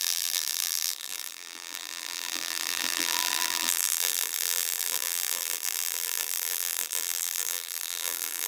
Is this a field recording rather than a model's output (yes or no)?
no